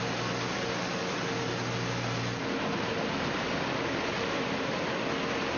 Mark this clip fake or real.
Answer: real